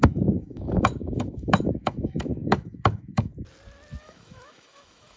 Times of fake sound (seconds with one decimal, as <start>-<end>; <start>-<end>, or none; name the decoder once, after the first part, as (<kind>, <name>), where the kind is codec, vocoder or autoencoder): 0.0-3.3 (autoencoder, DAC-VAE); 4.0-5.2